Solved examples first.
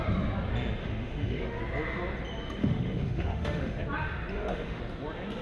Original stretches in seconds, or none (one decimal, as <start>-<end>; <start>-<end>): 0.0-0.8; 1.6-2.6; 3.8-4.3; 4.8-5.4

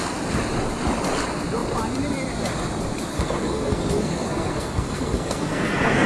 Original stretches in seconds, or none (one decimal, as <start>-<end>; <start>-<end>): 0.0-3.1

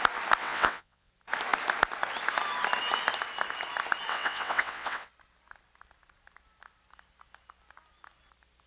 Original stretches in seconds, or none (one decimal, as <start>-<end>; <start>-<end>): 0.0-0.4; 1.1-4.1; 5.1-8.7

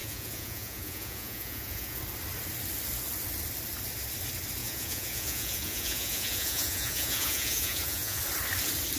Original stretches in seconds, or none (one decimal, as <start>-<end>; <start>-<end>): 2.0-4.6; 8.2-9.0

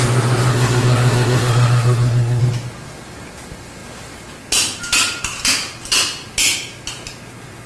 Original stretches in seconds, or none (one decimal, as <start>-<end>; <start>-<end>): 0.0-0.5; 2.4-7.7

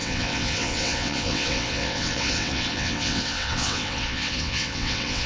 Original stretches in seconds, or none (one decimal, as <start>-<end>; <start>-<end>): none

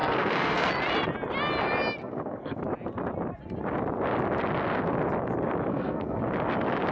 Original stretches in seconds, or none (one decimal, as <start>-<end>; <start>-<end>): 0.7-2.0; 2.6-5.7; 6.2-6.9

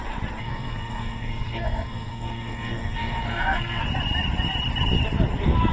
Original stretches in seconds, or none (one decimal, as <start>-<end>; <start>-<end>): 0.0-0.4; 3.8-5.7